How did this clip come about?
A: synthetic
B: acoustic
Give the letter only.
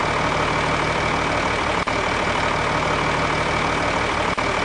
B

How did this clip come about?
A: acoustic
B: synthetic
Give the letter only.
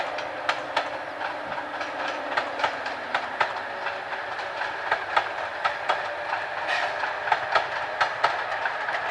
A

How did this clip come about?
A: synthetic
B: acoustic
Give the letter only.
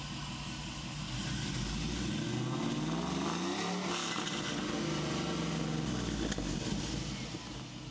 B